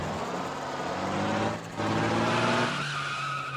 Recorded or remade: recorded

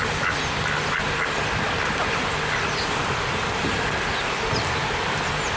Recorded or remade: recorded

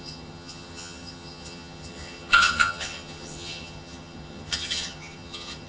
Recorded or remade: remade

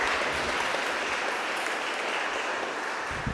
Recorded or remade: recorded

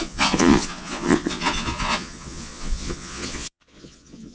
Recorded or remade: remade